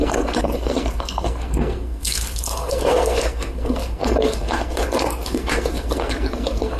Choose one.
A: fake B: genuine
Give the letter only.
A